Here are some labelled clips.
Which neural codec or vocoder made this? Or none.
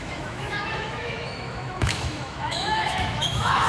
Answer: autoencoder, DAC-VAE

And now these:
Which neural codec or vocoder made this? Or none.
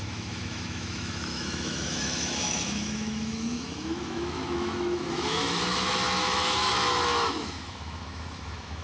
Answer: autoencoder, DAC-VAE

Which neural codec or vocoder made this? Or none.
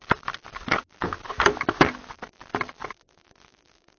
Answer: none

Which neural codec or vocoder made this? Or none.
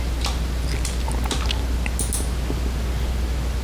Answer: none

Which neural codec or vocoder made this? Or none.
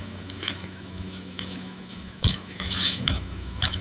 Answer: autoencoder, DAC-VAE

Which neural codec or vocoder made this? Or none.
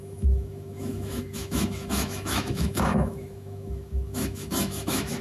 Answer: autoencoder, DAC-VAE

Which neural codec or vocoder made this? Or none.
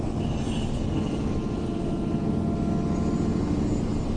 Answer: none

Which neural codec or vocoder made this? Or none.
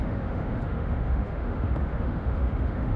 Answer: autoencoder, DAC-VAE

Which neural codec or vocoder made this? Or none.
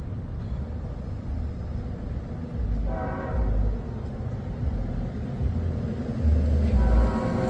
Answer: none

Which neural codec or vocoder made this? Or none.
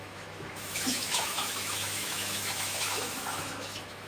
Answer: autoencoder, DAC-VAE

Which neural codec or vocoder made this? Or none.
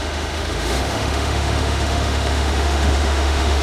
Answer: autoencoder, DAC-VAE